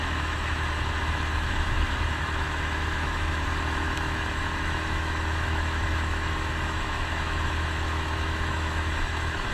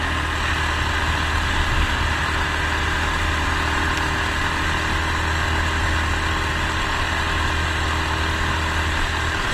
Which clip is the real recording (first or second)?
second